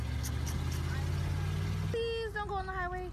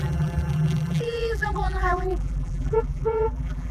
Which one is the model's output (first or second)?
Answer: second